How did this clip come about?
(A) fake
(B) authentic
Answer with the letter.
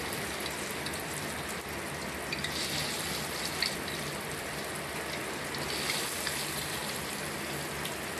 B